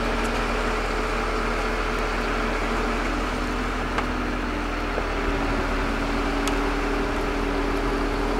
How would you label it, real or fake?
real